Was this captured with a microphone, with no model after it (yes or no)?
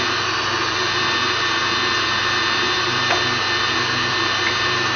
yes